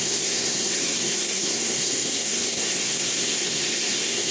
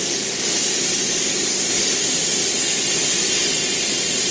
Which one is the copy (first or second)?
first